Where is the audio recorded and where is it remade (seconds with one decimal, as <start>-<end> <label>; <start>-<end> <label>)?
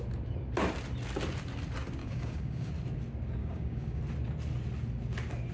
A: 0.0-2.0 recorded; 2.0-2.7 remade; 2.7-3.4 recorded; 3.4-4.0 remade; 4.0-5.5 recorded